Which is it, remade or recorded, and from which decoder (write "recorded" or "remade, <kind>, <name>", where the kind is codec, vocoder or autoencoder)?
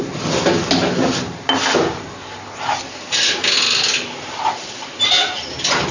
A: recorded